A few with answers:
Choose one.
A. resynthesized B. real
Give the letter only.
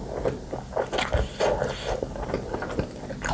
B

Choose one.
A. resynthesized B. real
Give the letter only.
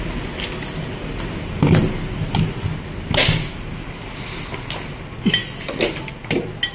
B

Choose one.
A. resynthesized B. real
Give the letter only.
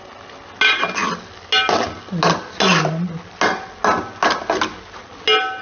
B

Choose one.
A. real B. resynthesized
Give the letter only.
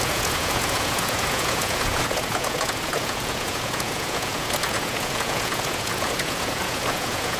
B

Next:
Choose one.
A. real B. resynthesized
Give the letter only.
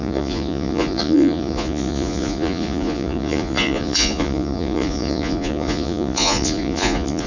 B